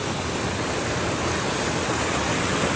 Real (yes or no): yes